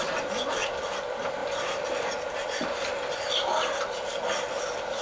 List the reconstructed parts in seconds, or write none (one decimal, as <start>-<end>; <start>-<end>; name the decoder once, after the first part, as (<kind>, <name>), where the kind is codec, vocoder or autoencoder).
none